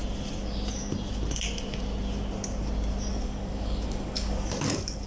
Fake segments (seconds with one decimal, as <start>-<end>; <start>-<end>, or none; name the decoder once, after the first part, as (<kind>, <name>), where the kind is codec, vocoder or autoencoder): 3.1-5.1 (codec, DAC)